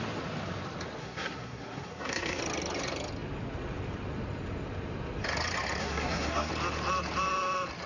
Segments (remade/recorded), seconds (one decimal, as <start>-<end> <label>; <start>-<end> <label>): 0.0-1.0 recorded; 1.0-2.4 remade; 2.4-5.8 recorded; 5.8-6.5 remade; 6.5-7.9 recorded